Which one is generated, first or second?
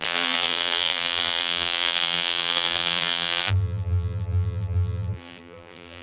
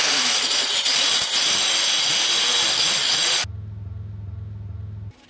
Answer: first